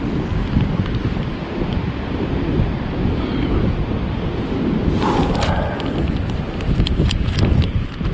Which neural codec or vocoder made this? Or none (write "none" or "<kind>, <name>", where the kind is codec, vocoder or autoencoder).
none